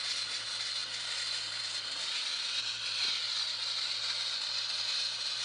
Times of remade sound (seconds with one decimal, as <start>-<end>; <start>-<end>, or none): none